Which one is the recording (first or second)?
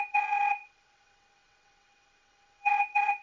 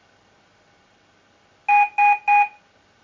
second